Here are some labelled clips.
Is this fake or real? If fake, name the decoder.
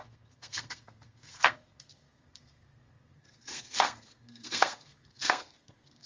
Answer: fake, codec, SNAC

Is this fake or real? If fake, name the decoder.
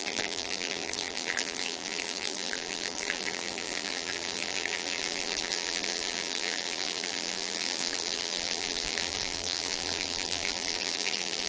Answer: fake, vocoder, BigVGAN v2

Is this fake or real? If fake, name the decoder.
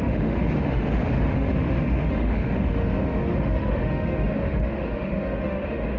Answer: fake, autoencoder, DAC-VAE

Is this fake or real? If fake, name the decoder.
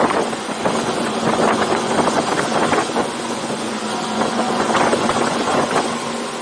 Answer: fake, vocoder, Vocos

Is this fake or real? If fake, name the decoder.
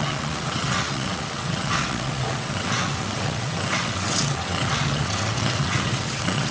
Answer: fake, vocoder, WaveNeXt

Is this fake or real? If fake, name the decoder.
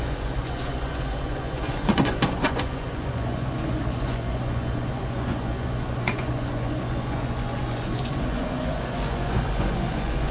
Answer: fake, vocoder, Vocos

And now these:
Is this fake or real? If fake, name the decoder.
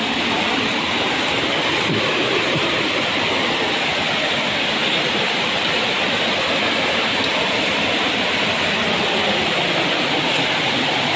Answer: real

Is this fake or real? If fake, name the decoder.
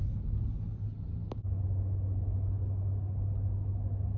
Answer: real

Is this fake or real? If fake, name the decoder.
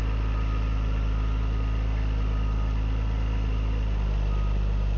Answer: real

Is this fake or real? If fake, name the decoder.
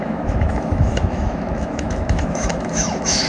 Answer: fake, autoencoder, DAC-VAE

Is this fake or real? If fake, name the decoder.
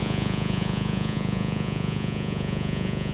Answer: fake, vocoder, Vocos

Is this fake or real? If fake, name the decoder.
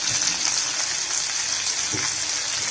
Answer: real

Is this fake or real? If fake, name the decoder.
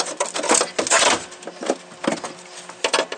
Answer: real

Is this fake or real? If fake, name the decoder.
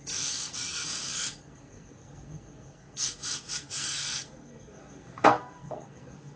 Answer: fake, codec, SNAC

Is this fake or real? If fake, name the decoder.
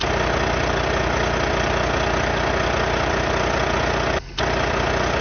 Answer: real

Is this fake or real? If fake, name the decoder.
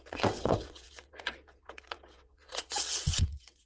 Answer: fake, vocoder, WaveNeXt